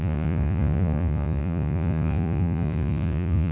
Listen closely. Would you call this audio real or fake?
fake